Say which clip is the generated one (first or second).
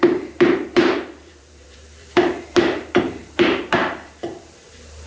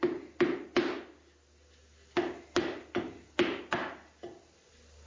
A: first